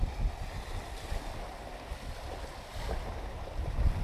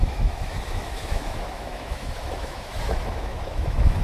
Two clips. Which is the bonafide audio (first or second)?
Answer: first